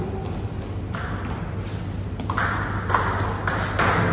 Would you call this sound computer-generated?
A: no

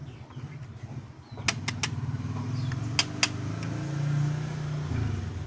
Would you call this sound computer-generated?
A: no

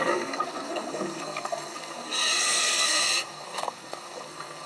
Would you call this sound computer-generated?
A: yes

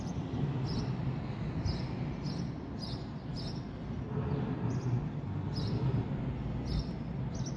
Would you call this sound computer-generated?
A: no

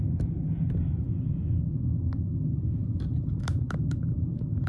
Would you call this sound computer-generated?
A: no